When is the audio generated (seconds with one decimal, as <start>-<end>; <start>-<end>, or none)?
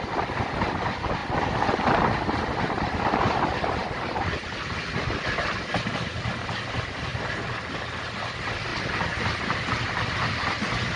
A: none